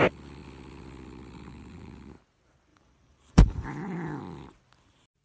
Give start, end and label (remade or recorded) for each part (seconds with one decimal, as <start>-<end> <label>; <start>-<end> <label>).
0.0-2.7 recorded; 2.7-4.2 remade; 4.2-5.2 recorded